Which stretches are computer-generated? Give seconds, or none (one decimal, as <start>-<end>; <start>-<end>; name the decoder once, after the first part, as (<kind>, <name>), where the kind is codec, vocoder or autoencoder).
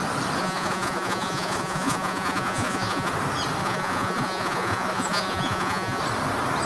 0.4-3.1 (vocoder, Vocos); 3.6-6.0